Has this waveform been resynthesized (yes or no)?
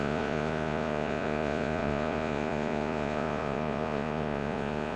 yes